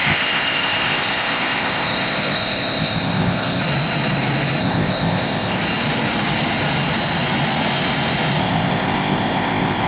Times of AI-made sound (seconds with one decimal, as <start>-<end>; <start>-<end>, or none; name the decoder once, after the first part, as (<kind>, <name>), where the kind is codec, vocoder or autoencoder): 0.0-3.6 (codec, ZipCodec); 4.6-5.6; 8.4-9.9